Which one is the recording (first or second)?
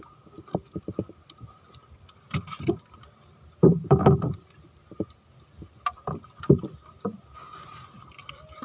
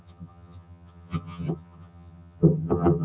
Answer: first